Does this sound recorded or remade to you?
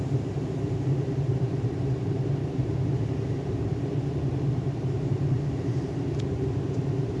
remade